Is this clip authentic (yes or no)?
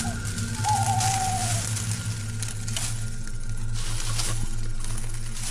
yes